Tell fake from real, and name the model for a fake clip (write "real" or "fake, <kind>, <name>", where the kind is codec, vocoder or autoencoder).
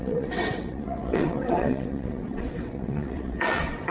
fake, vocoder, WaveNeXt